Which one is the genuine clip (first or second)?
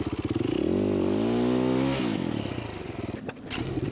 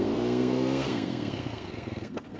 first